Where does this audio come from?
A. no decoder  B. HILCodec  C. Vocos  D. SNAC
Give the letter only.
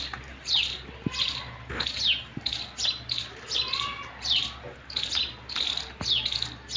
A